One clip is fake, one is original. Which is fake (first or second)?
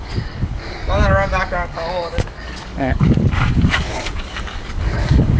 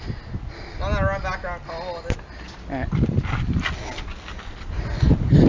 first